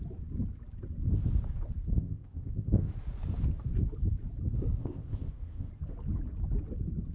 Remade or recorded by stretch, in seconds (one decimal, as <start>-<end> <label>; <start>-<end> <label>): 0.0-1.9 recorded; 1.9-2.9 remade; 2.9-4.8 recorded; 4.8-5.7 remade; 5.7-7.1 recorded